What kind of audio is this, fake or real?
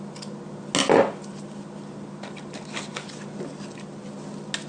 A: real